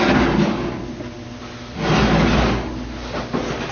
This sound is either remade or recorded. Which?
recorded